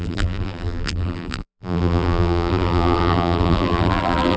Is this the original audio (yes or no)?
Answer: no